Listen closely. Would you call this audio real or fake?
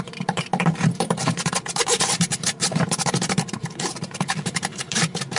fake